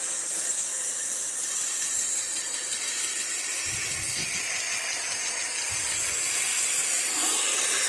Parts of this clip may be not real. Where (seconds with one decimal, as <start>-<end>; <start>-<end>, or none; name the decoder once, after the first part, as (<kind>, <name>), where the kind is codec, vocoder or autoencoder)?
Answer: 0.7-5.4 (vocoder, BigVGAN v2); 6.5-7.4